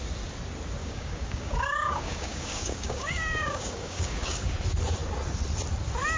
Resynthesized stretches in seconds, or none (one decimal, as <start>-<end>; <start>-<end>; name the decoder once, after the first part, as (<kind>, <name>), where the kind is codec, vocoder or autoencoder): 0.8-4.5 (codec, DAC)